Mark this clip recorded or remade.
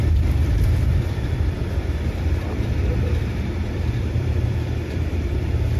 remade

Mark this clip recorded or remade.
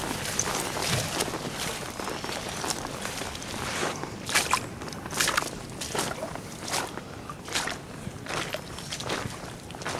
remade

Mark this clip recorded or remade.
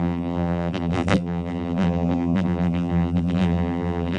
remade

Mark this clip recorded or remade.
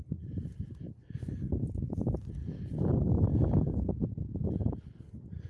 recorded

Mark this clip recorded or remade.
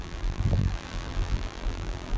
remade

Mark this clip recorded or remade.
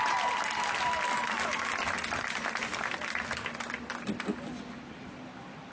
recorded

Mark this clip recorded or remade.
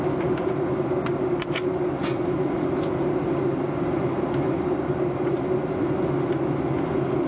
recorded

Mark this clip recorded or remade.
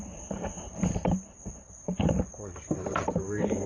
remade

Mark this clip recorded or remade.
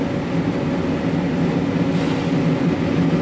recorded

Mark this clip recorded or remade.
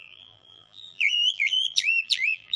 remade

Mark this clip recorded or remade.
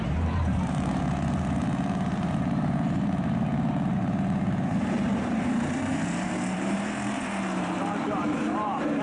remade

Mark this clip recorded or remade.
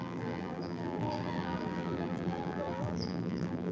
remade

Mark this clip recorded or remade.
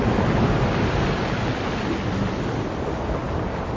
recorded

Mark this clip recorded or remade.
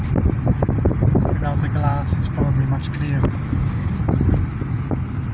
recorded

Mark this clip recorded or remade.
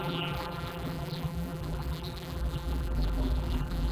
remade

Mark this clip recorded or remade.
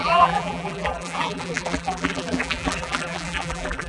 remade